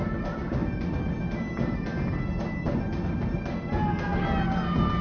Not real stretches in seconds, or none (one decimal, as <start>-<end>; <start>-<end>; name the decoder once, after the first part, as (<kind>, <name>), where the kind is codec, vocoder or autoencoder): none